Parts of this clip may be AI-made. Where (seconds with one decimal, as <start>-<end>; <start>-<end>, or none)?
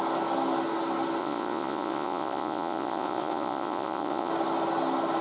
1.2-4.3